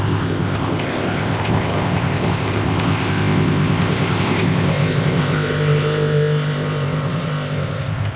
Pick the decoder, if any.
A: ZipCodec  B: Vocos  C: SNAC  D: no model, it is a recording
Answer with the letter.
A